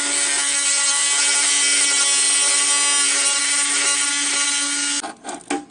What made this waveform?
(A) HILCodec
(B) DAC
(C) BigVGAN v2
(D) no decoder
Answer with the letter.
D